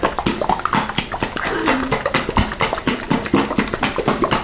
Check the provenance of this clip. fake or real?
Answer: real